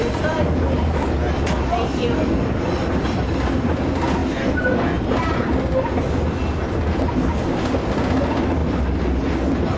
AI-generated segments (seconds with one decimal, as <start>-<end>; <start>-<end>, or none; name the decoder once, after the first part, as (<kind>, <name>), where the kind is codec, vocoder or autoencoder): none